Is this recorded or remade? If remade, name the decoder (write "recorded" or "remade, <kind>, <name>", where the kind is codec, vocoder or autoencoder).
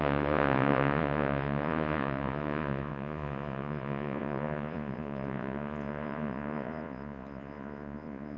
remade, vocoder, Vocos